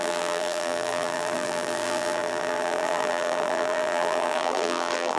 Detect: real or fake fake